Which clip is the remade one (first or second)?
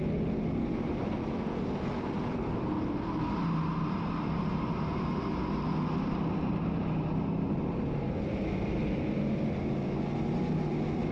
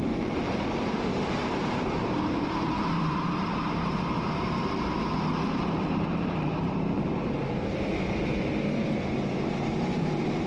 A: second